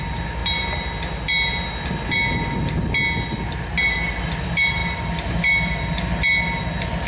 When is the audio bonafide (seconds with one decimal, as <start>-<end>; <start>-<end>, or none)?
0.0-7.1